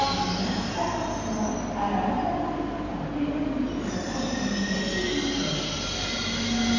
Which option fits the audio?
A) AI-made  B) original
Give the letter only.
B